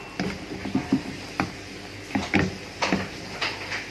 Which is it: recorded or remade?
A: recorded